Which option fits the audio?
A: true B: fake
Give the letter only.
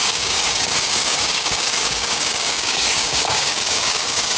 B